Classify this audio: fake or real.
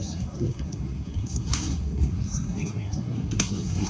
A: fake